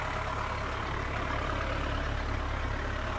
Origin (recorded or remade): recorded